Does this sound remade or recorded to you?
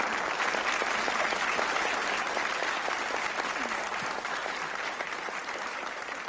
recorded